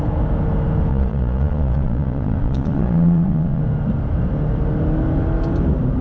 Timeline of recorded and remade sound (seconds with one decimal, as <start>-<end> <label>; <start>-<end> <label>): 0.0-0.9 recorded; 0.9-3.6 remade; 3.6-6.0 recorded